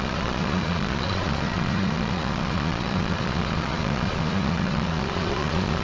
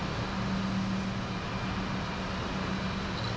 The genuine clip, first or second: second